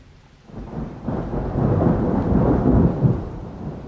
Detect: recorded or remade remade